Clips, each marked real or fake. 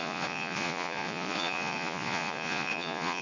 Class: fake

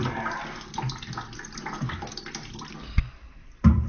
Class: real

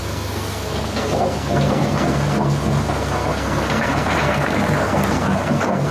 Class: fake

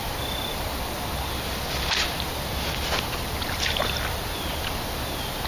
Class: real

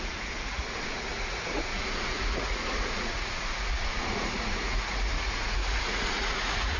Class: fake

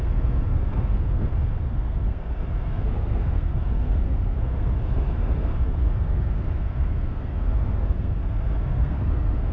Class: fake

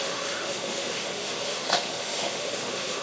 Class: fake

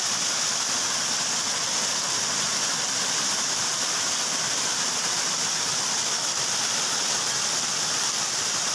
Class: real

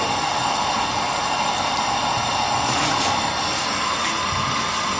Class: real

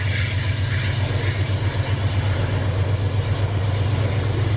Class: real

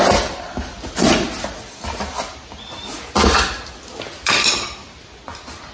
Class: real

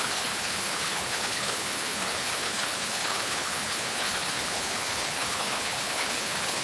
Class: fake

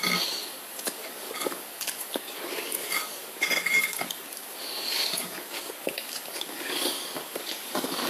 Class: fake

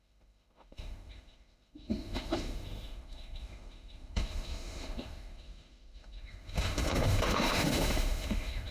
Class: fake